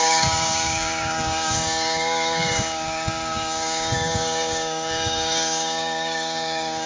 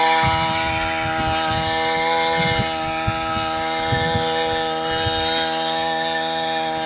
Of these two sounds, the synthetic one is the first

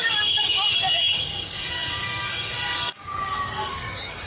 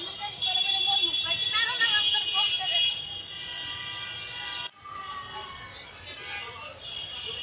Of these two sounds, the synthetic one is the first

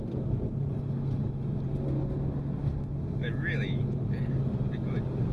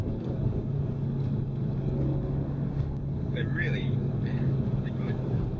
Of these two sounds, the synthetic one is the second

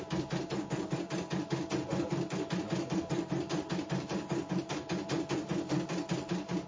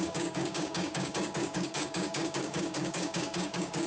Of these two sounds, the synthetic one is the second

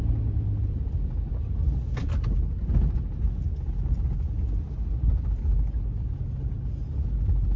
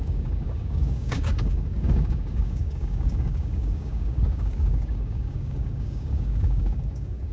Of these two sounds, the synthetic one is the second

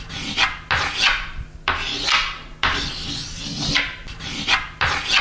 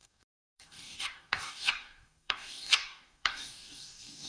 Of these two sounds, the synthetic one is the second